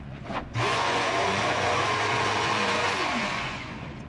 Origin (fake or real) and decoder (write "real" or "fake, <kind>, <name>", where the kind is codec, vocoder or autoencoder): fake, vocoder, Vocos